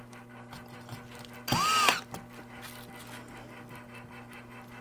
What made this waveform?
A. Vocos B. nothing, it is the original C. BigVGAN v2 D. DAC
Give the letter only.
B